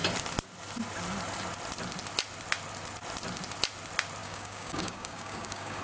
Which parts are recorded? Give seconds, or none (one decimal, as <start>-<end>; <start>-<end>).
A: 0.0-4.2